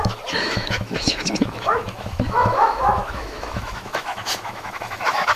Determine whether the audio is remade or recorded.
remade